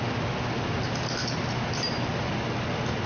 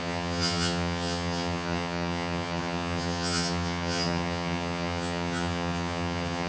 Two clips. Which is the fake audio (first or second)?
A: second